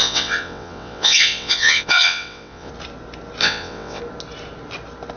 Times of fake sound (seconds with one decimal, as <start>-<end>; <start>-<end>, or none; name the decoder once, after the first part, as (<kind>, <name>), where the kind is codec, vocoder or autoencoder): 0.0-2.7 (vocoder, WaveNeXt); 3.4-4.0